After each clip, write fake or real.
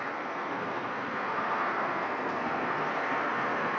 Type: fake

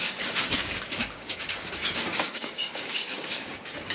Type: fake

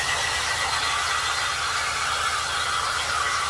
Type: real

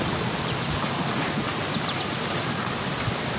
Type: real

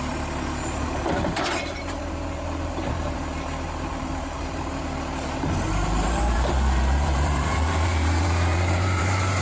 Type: fake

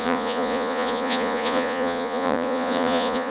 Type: fake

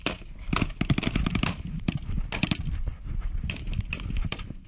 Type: real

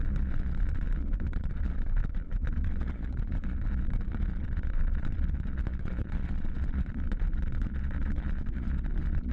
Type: fake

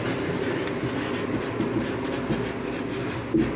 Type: real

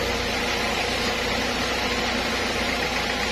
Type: real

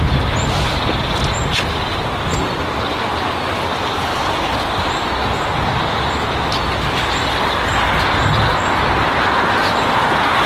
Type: real